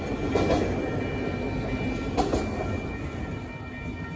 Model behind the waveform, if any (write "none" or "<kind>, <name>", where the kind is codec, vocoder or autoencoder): none